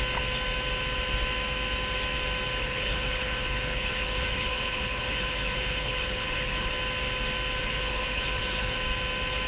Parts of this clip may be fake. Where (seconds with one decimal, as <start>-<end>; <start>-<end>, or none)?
2.6-6.7; 7.6-8.8